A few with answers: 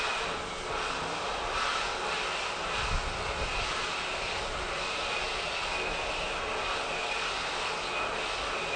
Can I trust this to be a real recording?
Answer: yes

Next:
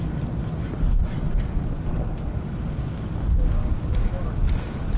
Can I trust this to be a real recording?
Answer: yes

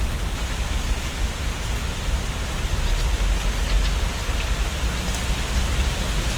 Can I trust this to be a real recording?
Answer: yes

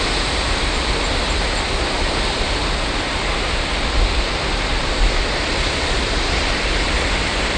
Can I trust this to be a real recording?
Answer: yes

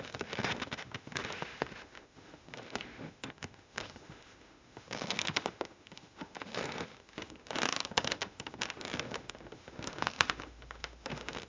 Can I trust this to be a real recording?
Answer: no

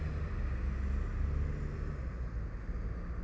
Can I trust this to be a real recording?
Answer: yes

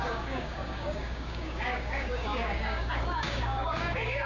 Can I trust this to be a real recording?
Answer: no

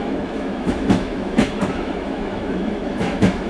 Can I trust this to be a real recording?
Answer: no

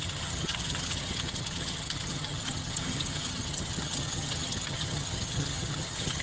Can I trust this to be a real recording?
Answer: no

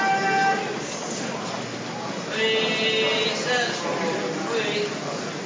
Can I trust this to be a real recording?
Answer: yes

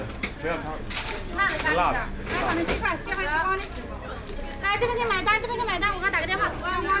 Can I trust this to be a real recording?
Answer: yes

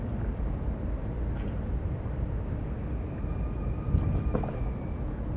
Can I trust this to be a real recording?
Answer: yes